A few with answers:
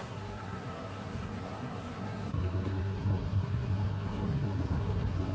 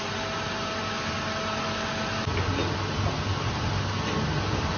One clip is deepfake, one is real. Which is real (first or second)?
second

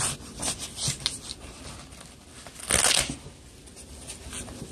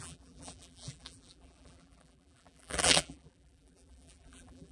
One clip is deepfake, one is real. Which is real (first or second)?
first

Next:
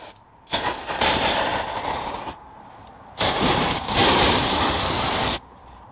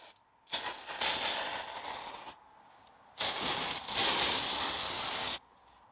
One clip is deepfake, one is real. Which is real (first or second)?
second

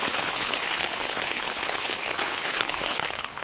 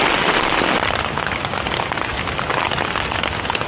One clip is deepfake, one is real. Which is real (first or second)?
second